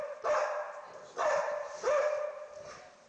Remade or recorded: remade